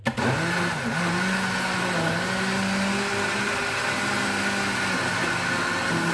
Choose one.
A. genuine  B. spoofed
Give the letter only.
A